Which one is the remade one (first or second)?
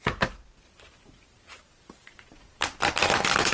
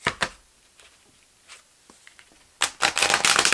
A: first